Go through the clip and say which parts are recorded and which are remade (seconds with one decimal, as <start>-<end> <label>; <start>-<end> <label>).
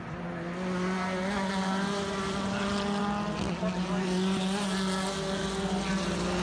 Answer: 0.0-6.4 recorded